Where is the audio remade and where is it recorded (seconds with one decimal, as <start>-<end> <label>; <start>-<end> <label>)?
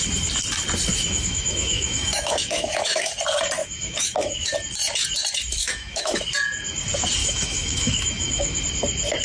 0.0-0.9 recorded; 0.9-3.1 remade; 3.1-3.6 recorded; 3.6-4.5 remade; 4.5-5.6 recorded; 5.6-6.2 remade; 6.2-7.2 recorded; 7.2-8.6 remade; 8.6-9.2 recorded